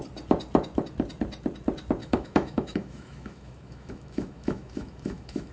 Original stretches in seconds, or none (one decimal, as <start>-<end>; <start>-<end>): 0.0-2.0